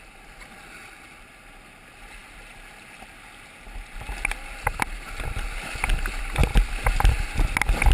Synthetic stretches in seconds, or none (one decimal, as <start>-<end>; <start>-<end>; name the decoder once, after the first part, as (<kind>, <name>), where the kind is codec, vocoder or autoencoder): none